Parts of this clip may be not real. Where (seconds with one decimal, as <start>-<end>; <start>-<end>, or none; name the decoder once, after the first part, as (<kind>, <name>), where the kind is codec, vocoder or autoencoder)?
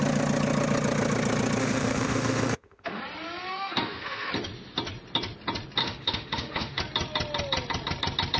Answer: 1.6-3.0 (autoencoder, DAC-VAE); 3.5-4.3; 5.8-6.8